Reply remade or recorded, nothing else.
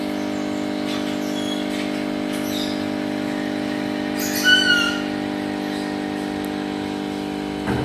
recorded